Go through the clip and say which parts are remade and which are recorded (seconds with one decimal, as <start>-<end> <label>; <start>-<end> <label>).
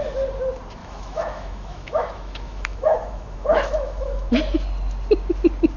0.0-0.8 recorded; 0.8-4.3 remade; 4.3-5.8 recorded